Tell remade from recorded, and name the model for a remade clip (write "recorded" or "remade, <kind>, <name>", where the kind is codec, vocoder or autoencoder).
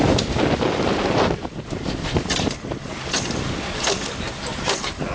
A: remade, vocoder, BigVGAN v2